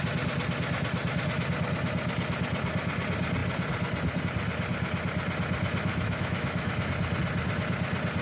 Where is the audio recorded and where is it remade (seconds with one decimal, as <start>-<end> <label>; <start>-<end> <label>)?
0.0-5.9 recorded; 5.9-6.9 remade; 6.9-8.2 recorded